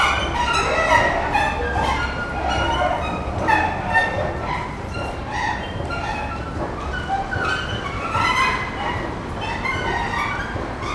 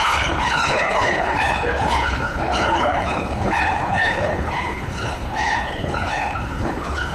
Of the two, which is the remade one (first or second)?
second